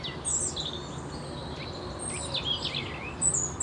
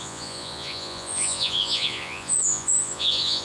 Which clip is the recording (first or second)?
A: first